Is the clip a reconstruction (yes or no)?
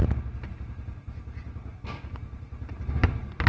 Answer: no